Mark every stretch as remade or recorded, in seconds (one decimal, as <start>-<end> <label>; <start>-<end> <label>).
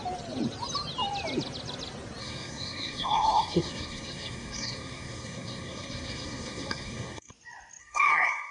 0.0-2.2 recorded; 2.2-7.3 remade; 7.3-7.8 recorded; 7.8-8.5 remade